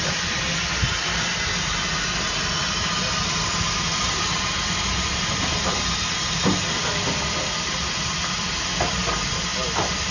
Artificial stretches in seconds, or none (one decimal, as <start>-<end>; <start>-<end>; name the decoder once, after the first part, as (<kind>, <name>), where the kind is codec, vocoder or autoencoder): none